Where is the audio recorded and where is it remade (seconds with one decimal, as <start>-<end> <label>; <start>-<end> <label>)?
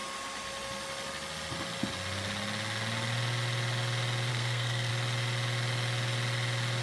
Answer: 0.0-4.3 recorded; 4.3-4.9 remade; 4.9-6.8 recorded